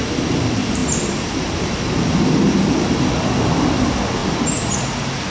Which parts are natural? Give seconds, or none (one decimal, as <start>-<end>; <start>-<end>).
0.0-5.3